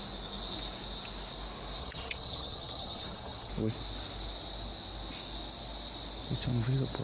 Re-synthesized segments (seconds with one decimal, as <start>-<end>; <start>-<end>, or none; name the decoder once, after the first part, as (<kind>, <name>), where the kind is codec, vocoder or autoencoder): 1.8-3.5 (vocoder, HiFi-GAN)